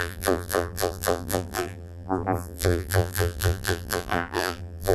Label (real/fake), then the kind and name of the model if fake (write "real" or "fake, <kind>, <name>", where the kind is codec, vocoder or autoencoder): fake, vocoder, BigVGAN v2